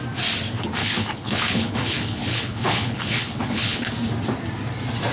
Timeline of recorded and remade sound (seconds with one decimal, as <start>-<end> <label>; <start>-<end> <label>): 0.0-0.8 recorded; 0.8-3.9 remade; 3.9-5.1 recorded